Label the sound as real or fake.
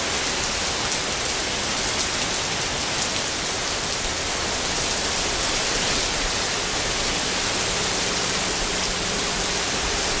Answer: real